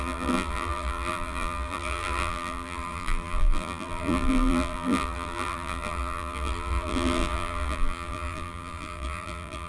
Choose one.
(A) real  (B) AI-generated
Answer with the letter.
B